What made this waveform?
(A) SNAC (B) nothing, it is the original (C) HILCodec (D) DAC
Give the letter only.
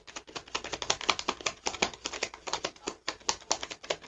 B